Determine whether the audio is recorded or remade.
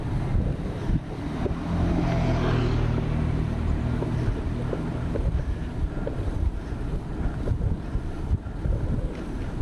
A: recorded